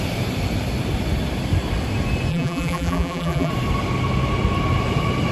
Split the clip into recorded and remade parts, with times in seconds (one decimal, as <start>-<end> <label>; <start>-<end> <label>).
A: 0.0-2.3 recorded; 2.3-3.5 remade; 3.5-5.3 recorded